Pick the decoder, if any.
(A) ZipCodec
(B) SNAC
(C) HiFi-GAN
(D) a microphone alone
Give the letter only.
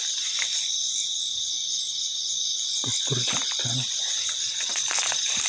D